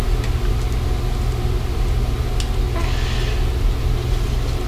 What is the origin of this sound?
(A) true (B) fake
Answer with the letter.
A